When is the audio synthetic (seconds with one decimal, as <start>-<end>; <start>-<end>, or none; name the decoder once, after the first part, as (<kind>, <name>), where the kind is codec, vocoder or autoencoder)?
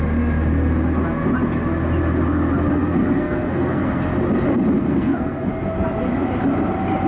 2.8-4.0 (codec, SNAC); 4.8-5.5